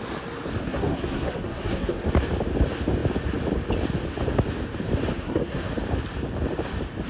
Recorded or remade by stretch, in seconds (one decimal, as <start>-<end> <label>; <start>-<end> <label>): 0.0-0.6 recorded; 0.6-2.1 remade; 2.1-5.1 recorded; 5.1-5.7 remade; 5.7-7.1 recorded